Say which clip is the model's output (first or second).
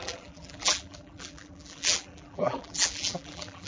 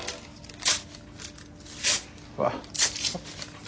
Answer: first